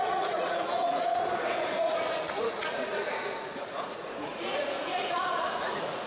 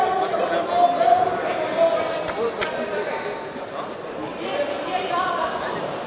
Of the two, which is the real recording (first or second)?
second